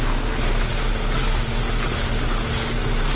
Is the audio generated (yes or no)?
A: no